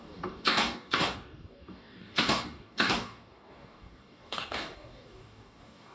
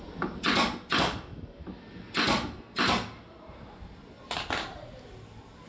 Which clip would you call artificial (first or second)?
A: first